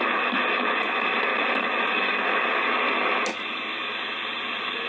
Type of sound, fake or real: real